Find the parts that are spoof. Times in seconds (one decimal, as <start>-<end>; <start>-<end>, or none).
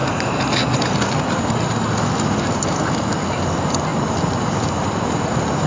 none